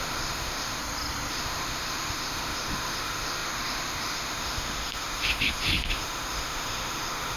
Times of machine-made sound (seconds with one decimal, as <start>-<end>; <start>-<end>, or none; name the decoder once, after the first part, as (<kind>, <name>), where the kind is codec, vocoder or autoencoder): 0.0-0.8 (autoencoder, DAC-VAE); 1.3-7.4